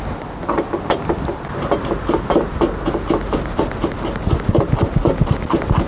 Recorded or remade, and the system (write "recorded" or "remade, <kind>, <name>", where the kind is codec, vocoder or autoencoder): recorded